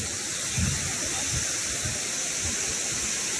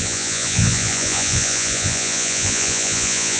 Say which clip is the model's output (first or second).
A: second